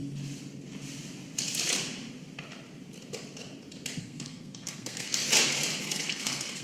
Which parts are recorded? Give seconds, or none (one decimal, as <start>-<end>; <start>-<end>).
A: 0.0-4.0; 5.2-5.8